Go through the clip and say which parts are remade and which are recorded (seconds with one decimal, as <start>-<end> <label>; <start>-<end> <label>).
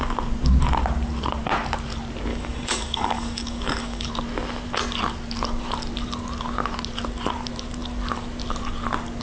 0.0-2.3 recorded; 2.3-4.1 remade; 4.1-9.2 recorded